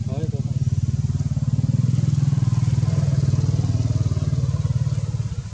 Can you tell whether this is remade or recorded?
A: recorded